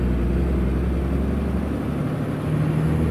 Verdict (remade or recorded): recorded